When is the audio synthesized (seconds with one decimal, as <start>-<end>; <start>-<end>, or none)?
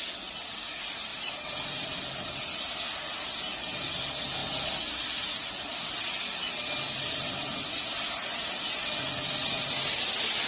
1.1-2.1